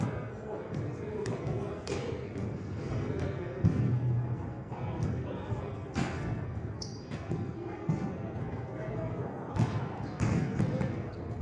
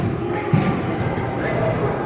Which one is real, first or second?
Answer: second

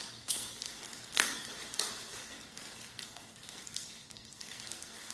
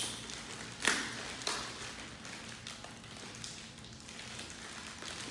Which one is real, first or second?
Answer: second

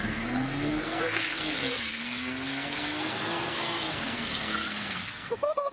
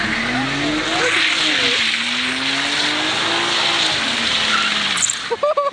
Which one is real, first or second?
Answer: second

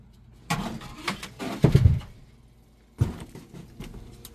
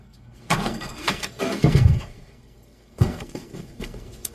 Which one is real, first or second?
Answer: first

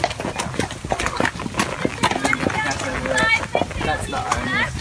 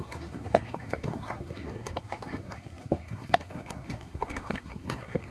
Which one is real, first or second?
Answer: first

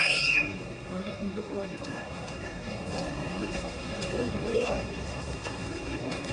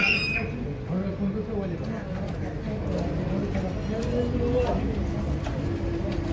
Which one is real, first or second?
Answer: second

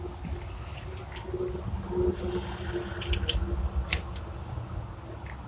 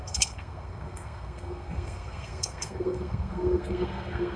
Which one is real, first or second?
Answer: first